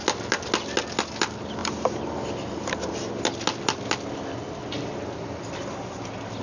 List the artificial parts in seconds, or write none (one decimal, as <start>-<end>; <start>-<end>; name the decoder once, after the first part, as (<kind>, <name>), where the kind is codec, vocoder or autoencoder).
none